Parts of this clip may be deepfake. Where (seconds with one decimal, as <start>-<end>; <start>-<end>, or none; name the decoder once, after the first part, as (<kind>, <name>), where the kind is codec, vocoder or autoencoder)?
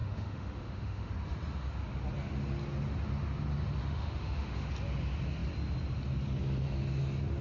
0.0-1.1 (autoencoder, DAC-VAE); 3.8-4.7